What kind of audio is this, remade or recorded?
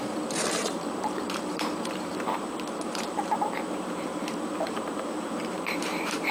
remade